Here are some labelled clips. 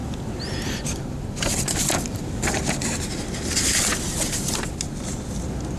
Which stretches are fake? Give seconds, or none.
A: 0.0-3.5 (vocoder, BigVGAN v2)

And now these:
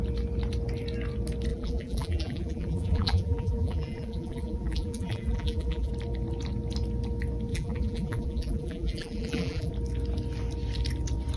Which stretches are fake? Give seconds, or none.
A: 1.5-5.9 (vocoder, BigVGAN v2); 7.5-9.7

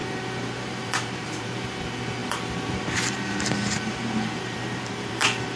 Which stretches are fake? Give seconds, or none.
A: 0.0-1.7 (vocoder, BigVGAN v2); 2.2-5.6